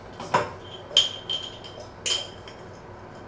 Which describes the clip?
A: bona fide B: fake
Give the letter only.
A